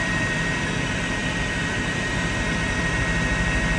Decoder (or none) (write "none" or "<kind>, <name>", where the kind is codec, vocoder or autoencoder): vocoder, BigVGAN v2